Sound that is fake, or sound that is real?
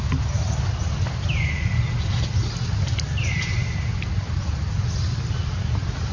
real